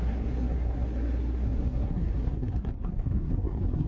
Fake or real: fake